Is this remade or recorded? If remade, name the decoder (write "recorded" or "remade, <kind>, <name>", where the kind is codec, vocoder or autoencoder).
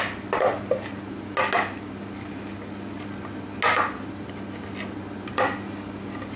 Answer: recorded